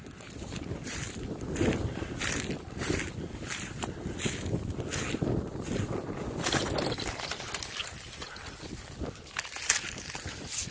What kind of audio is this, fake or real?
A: real